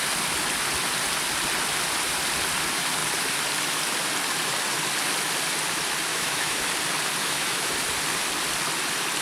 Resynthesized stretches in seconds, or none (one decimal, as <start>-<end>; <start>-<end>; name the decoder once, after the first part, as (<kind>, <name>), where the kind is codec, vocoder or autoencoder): 6.1-6.7 (autoencoder, DAC-VAE); 7.2-7.7